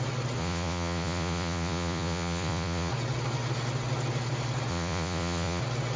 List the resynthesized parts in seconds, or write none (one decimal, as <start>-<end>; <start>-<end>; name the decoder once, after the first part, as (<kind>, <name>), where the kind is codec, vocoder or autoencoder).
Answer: 0.4-2.9 (vocoder, Vocos); 4.7-5.6